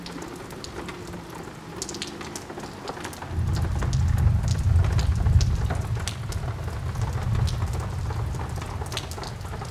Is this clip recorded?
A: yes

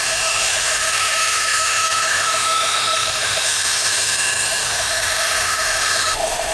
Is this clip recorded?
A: no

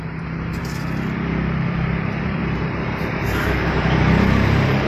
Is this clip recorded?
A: no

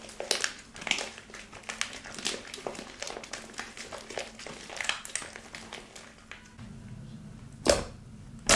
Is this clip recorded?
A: yes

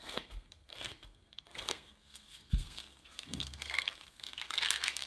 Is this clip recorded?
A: no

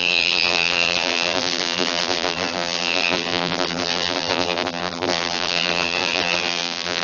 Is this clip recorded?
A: no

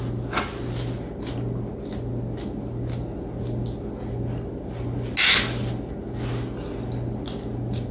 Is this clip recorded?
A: yes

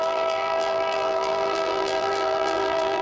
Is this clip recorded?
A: no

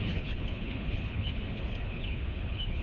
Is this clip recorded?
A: no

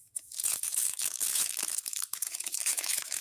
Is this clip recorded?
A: no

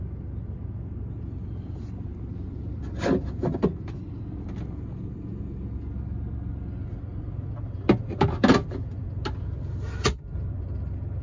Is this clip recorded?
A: yes